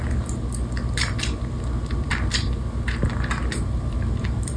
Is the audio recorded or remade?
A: recorded